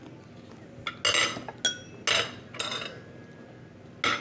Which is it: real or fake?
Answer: real